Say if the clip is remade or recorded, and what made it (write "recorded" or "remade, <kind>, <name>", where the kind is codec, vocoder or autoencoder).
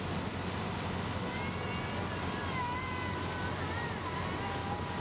recorded